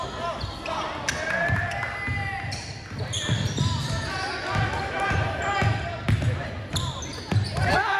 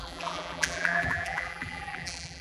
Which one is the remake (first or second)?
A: second